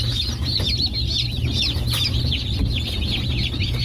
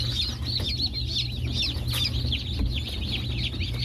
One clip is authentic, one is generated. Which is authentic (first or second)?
second